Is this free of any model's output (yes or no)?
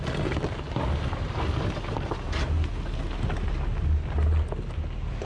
yes